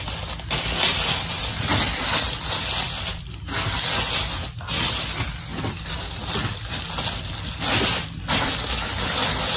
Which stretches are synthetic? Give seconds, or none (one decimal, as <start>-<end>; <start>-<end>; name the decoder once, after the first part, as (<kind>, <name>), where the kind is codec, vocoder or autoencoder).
none